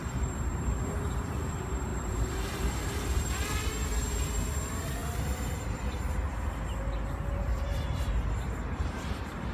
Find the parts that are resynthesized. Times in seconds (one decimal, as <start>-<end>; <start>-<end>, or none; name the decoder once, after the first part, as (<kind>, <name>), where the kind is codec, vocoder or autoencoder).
0.0-0.8 (vocoder, BigVGAN v2); 1.9-3.7; 5.0-6.0